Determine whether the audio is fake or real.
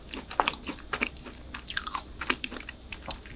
real